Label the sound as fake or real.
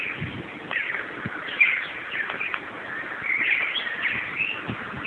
real